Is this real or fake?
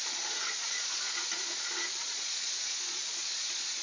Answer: fake